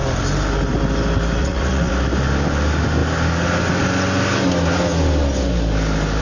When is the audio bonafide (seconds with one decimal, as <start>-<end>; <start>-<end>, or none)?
0.0-1.4; 1.9-6.2